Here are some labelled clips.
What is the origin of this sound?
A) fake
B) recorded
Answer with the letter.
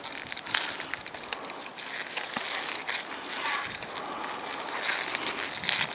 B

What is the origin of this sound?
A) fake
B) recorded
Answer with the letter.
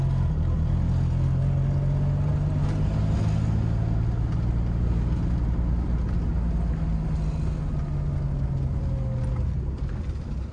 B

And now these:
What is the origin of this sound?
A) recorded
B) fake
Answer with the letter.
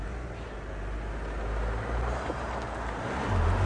A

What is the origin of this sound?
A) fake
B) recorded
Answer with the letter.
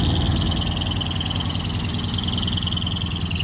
B